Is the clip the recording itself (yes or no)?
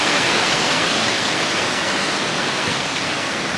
no